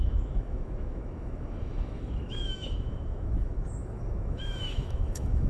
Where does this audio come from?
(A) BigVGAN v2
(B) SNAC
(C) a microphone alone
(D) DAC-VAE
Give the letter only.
D